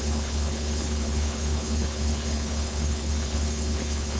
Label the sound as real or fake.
fake